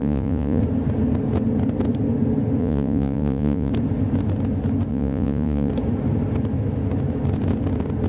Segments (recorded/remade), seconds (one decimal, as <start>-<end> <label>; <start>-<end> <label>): 0.0-0.6 remade; 0.6-2.6 recorded; 2.6-3.7 remade; 3.7-4.9 recorded; 4.9-5.7 remade; 5.7-8.1 recorded